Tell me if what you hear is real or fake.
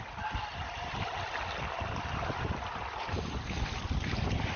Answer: real